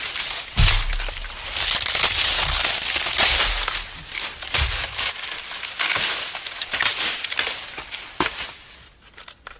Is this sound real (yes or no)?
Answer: yes